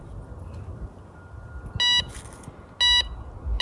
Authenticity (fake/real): real